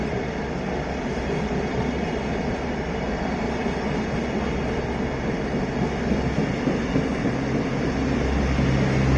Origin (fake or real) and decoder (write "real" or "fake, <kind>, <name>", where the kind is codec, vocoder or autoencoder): real